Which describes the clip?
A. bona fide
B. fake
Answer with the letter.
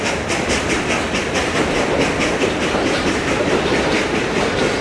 B